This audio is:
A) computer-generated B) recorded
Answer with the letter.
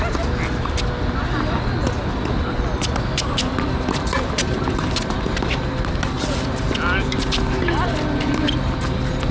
B